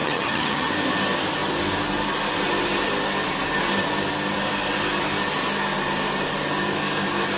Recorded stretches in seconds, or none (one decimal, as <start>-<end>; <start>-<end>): 0.7-7.4